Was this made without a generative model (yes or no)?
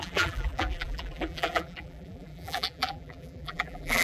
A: no